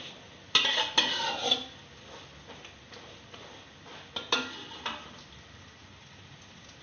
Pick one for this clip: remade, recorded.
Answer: recorded